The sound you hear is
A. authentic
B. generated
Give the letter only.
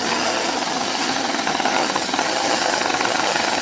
B